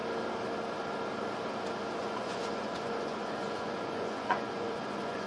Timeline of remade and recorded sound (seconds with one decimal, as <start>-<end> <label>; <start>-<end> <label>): 0.0-2.0 recorded; 2.0-5.3 remade